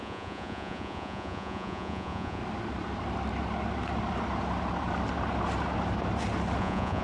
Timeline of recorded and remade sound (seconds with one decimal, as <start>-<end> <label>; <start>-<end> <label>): 0.0-2.4 remade; 2.4-6.6 recorded; 6.6-7.0 remade